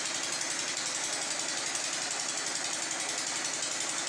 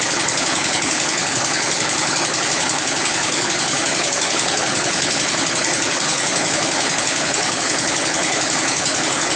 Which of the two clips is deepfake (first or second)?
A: second